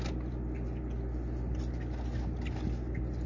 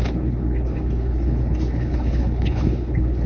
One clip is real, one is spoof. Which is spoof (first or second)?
second